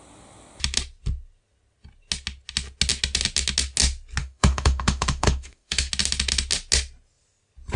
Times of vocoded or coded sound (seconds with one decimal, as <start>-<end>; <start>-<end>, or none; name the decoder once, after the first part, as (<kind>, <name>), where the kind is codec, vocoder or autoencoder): 4.2-5.9 (autoencoder, DAC-VAE)